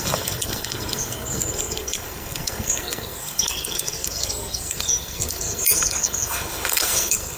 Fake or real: fake